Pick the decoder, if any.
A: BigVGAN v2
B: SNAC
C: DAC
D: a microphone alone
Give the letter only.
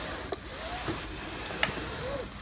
D